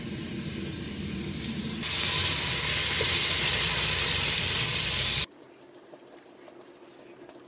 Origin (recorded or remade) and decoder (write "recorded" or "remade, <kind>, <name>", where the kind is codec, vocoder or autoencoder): recorded